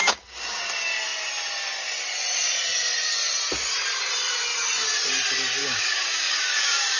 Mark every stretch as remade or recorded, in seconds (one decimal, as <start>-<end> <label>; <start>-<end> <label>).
0.0-0.6 remade; 0.6-5.6 recorded; 5.6-7.0 remade